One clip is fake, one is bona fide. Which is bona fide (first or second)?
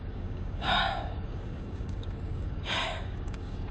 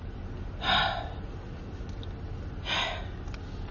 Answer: second